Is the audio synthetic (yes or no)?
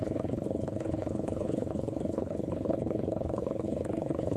yes